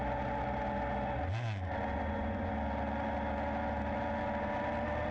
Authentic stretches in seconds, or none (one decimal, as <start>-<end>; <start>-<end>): 0.0-1.9; 2.5-5.1